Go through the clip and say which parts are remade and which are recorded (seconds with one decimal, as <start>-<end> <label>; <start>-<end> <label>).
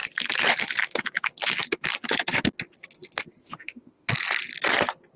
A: 0.0-3.4 recorded; 3.4-4.1 remade; 4.1-5.2 recorded